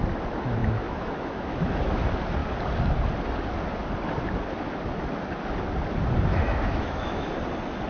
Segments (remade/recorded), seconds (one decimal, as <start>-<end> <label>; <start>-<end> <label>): 0.0-0.6 recorded; 0.6-2.0 remade; 2.0-6.3 recorded; 6.3-7.3 remade; 7.3-7.9 recorded